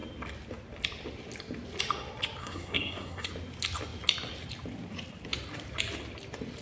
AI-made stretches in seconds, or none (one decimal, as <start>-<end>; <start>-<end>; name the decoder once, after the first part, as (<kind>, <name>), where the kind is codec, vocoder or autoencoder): 2.4-3.3 (codec, SNAC)